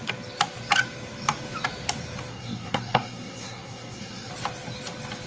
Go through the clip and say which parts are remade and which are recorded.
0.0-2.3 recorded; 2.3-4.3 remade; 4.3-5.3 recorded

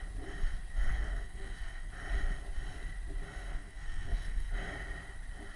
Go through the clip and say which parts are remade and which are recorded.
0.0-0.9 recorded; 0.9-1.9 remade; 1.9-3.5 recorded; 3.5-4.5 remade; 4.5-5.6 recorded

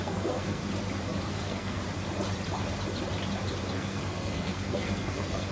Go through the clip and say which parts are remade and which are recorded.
0.0-0.6 remade; 0.6-1.3 recorded; 1.3-1.8 remade; 1.8-3.7 recorded; 3.7-5.5 remade

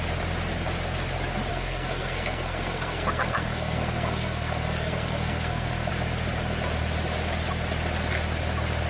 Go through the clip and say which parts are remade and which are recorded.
0.0-1.5 recorded; 1.5-5.9 remade; 5.9-8.9 recorded